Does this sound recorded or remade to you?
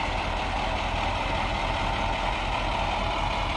recorded